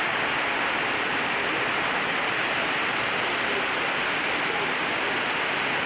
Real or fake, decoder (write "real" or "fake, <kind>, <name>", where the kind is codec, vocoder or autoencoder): real